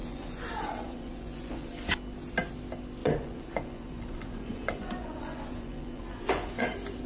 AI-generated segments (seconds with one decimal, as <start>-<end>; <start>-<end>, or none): 0.0-1.7; 3.0-6.6